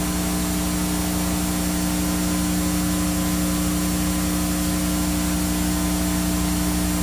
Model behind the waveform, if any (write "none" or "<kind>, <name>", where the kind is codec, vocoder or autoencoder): none